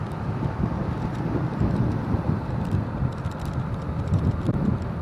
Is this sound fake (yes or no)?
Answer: yes